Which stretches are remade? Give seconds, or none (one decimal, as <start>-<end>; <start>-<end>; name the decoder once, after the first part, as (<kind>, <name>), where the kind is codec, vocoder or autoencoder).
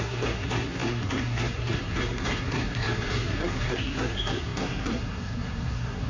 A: 0.0-6.1 (codec, SNAC)